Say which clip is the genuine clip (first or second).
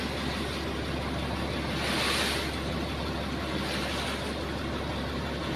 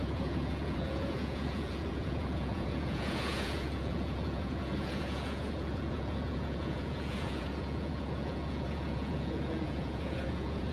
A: first